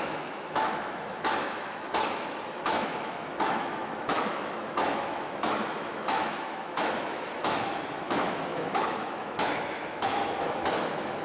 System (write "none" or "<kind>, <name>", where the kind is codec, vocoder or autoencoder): autoencoder, DAC-VAE